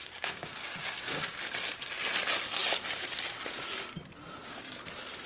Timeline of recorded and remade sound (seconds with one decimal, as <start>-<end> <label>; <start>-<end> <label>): 0.0-1.4 remade; 1.4-5.3 recorded